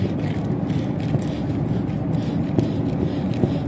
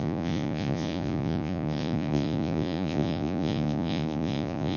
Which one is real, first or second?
first